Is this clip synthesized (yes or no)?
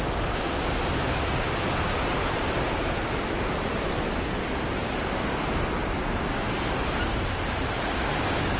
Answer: no